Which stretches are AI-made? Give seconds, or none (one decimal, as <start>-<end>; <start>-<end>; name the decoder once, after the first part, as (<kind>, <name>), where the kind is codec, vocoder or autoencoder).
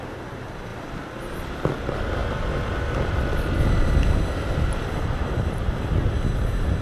none